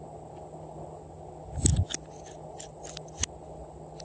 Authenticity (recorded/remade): recorded